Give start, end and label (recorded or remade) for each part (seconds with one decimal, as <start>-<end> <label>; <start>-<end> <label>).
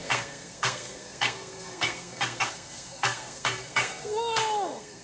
0.0-5.0 remade